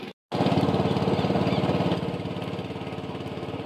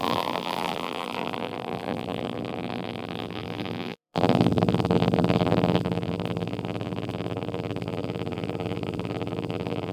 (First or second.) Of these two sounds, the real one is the first